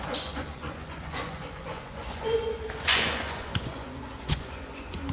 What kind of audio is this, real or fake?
fake